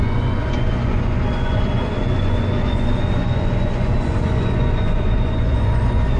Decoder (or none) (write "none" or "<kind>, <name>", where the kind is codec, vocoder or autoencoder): vocoder, Vocos